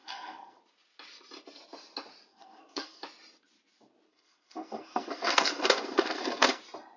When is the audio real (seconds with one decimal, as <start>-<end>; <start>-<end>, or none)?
0.6-2.3; 3.0-4.1; 6.6-7.0